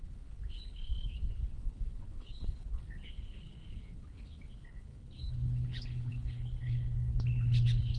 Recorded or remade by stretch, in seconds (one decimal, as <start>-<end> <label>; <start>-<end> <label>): 0.0-8.0 remade